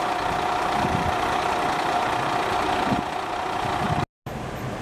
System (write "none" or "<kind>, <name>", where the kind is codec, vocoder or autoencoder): none